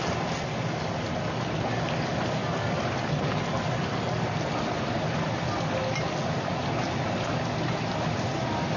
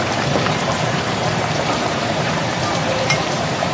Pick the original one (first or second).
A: first